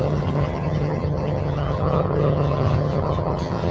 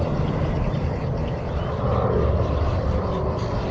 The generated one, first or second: first